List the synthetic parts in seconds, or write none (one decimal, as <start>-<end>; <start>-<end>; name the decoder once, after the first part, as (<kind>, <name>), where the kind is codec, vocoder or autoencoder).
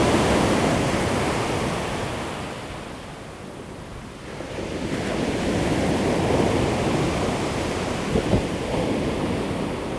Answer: none